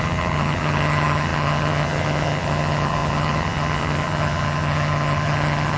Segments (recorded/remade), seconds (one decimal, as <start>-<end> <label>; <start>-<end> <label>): 0.0-5.8 remade